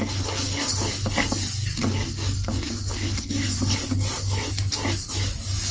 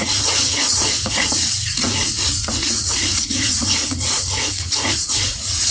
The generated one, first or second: second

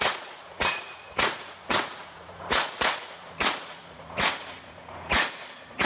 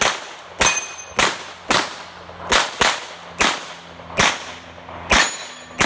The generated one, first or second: first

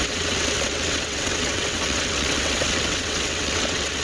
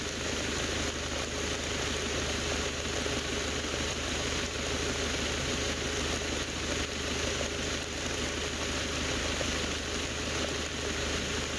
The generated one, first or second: first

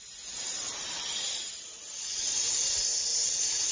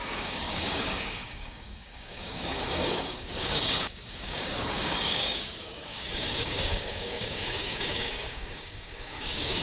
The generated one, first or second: second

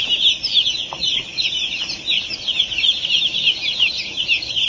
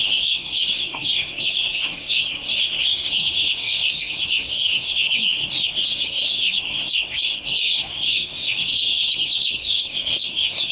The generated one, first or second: second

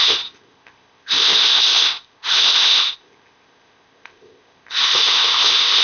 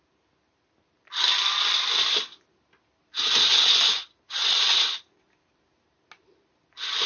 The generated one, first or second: first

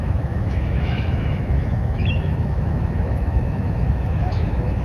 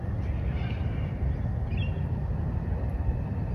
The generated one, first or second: first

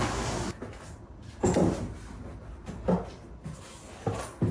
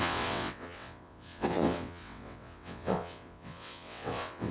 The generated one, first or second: second